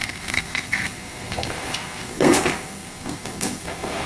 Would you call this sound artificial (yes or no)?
yes